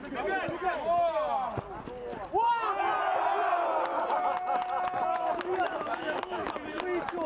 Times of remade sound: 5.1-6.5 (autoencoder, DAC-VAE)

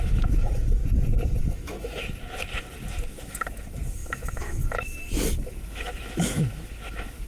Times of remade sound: 0.0-0.8 (autoencoder, DAC-VAE); 1.4-2.0; 3.1-7.3